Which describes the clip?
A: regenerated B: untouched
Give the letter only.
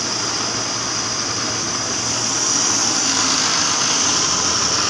B